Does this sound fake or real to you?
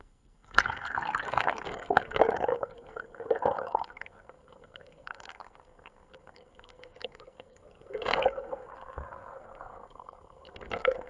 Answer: fake